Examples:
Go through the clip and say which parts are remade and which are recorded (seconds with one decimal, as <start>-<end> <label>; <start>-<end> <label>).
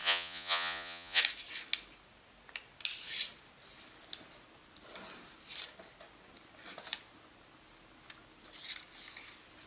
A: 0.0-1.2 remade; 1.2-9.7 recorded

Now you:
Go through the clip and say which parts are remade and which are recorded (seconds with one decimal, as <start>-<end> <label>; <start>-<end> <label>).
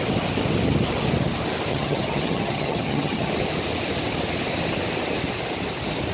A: 0.0-1.7 recorded; 1.7-3.3 remade; 3.3-6.1 recorded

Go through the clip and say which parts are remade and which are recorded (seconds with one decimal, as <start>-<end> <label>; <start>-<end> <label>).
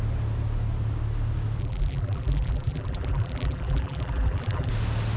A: 0.0-1.6 recorded; 1.6-4.7 remade; 4.7-5.2 recorded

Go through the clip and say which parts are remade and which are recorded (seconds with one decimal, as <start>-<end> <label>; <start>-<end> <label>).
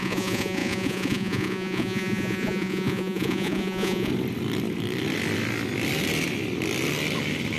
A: 0.0-4.1 remade; 4.1-7.6 recorded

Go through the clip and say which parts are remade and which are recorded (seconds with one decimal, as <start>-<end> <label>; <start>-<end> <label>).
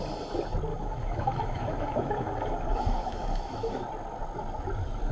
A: 0.0-0.7 recorded; 0.7-3.8 remade; 3.8-5.1 recorded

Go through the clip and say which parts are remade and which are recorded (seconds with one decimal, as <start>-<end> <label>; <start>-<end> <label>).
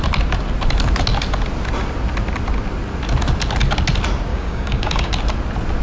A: 0.0-4.3 recorded; 4.3-5.1 remade; 5.1-5.8 recorded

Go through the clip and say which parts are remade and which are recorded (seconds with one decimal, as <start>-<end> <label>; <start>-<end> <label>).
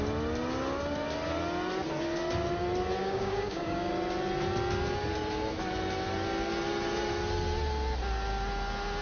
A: 0.0-3.0 recorded; 3.0-3.9 remade; 3.9-9.0 recorded